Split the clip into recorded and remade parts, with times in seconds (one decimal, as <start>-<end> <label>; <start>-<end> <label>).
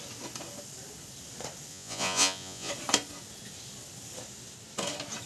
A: 0.0-1.7 recorded; 1.7-2.7 remade; 2.7-5.3 recorded